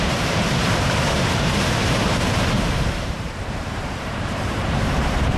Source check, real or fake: fake